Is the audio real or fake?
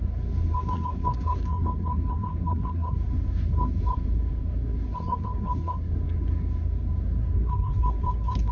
fake